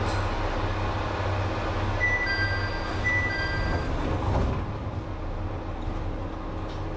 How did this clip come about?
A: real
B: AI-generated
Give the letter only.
A